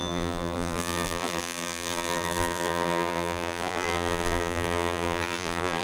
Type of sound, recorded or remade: remade